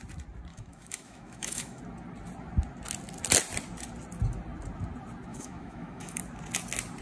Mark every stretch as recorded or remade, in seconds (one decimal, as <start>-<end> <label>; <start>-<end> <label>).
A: 0.0-0.5 recorded; 0.5-1.8 remade; 1.8-5.3 recorded; 5.3-6.2 remade; 6.2-7.0 recorded